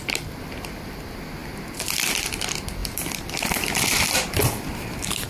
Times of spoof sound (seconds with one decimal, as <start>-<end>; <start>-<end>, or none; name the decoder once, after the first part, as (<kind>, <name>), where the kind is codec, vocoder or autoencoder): 1.4-2.3 (vocoder, BigVGAN v2); 2.8-4.7